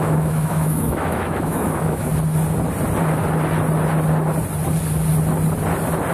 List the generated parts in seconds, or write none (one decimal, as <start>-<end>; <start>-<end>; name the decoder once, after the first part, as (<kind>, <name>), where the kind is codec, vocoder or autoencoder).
0.0-2.1 (autoencoder, DAC-VAE)